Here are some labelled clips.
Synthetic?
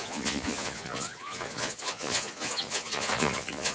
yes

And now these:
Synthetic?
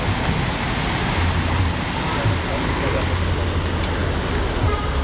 no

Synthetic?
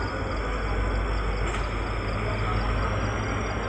no